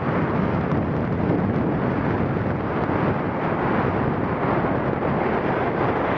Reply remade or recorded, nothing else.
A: recorded